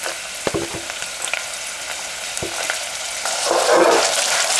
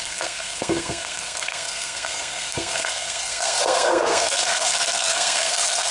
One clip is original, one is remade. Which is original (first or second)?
first